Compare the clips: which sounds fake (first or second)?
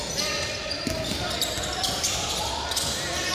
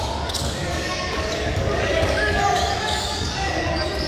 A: second